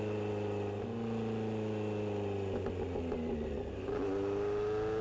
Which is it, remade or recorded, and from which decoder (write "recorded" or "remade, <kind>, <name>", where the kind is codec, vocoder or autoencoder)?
recorded